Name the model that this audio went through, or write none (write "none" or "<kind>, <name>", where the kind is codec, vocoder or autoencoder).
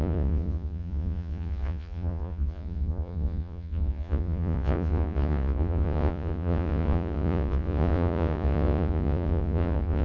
vocoder, Vocos